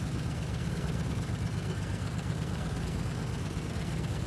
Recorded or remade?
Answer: remade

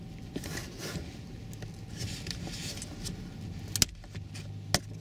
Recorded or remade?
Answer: recorded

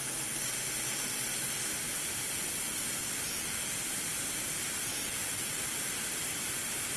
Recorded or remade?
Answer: recorded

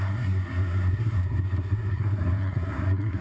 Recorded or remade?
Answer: remade